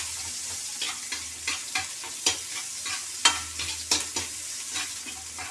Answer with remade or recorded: recorded